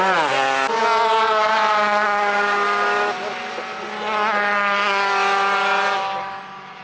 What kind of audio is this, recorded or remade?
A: recorded